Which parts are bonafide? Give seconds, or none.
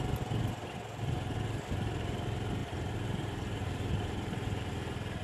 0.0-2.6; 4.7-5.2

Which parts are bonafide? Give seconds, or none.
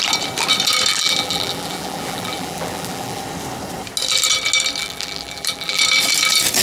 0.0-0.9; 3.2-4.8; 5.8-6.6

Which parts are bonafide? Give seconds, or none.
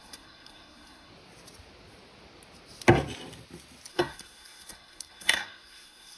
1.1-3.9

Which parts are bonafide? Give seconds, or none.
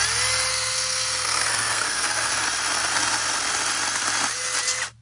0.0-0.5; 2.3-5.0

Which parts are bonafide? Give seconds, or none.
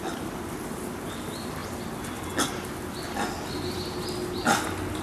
0.0-5.0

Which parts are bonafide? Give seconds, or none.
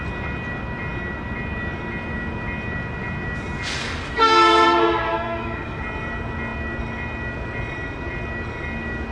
0.0-3.8; 5.8-9.1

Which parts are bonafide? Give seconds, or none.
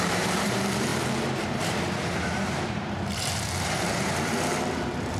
none